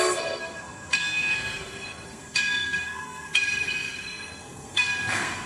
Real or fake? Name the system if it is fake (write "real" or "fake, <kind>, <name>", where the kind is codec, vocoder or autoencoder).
fake, codec, SNAC